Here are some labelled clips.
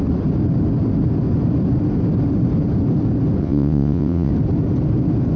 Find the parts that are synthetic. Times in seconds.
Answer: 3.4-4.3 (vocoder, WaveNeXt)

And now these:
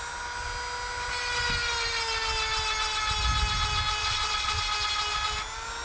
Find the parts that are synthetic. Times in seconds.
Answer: 4.0-4.6 (vocoder, WaveNeXt)

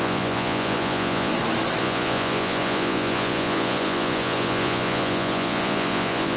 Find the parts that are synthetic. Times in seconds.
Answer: 0.0-1.3 (vocoder, Vocos); 1.8-6.4